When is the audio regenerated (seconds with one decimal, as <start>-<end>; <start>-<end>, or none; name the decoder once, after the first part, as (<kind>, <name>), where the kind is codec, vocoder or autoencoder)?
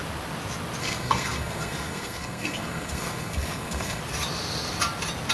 0.8-4.0 (codec, SNAC)